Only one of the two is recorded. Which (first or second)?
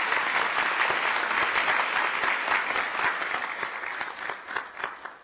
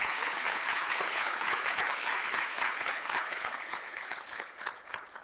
first